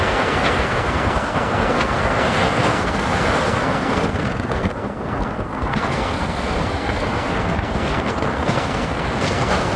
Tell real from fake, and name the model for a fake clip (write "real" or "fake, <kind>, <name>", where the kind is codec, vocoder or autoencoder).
fake, codec, SNAC